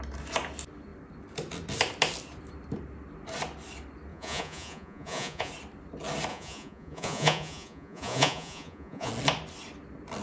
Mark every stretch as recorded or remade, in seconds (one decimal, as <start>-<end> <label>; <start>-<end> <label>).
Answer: 0.0-4.1 recorded; 4.1-5.5 remade; 5.5-6.3 recorded; 6.3-9.1 remade; 9.1-10.2 recorded